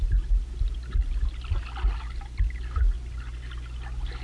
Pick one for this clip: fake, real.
real